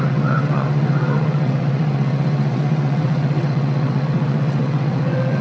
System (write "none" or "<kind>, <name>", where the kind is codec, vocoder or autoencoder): vocoder, WaveNeXt